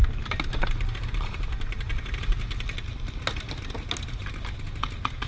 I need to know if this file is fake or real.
real